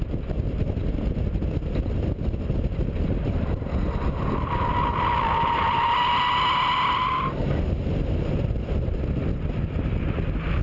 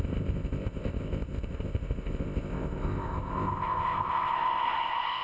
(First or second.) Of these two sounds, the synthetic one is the second